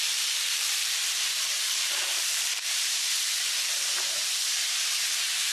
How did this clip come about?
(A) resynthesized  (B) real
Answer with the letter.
A